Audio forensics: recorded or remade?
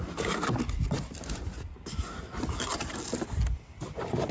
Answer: recorded